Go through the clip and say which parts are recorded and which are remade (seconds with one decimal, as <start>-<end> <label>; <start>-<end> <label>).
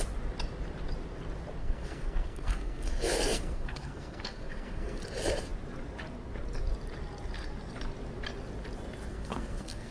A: 0.0-1.6 recorded; 1.6-5.0 remade; 5.0-9.1 recorded; 9.1-9.9 remade